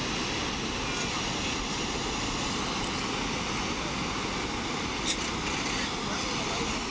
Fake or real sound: real